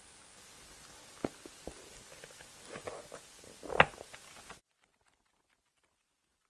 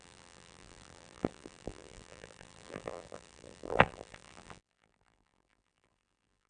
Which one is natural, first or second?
first